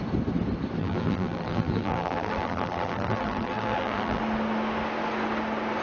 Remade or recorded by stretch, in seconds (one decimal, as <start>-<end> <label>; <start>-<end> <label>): 0.0-0.8 recorded; 0.8-4.2 remade; 4.2-5.8 recorded